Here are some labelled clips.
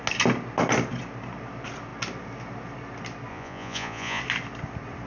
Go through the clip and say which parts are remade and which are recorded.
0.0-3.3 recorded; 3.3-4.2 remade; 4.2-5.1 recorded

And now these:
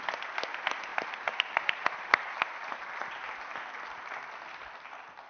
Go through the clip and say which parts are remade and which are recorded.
0.0-0.9 recorded; 0.9-3.5 remade; 3.5-5.3 recorded

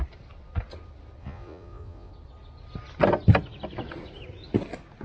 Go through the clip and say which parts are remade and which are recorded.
0.0-1.2 recorded; 1.2-2.1 remade; 2.1-5.0 recorded

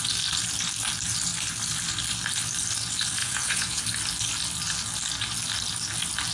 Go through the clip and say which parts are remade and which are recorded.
0.0-3.2 recorded; 3.2-3.8 remade; 3.8-6.3 recorded